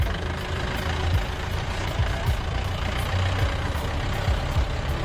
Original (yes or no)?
yes